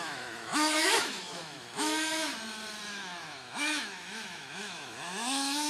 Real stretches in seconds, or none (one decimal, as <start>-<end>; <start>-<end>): 2.3-2.9